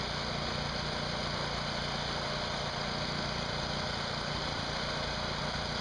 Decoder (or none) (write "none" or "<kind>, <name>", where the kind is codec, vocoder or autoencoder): none